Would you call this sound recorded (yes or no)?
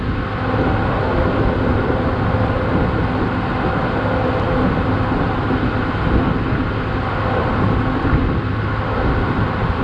yes